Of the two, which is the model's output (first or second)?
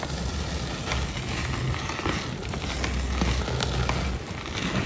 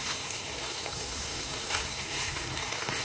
second